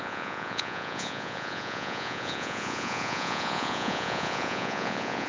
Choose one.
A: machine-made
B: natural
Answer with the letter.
A